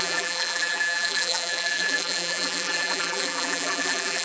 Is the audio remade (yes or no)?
yes